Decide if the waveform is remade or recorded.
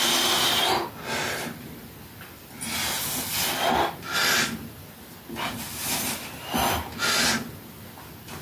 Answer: recorded